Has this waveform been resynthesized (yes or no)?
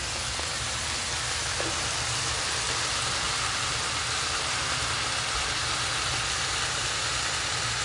no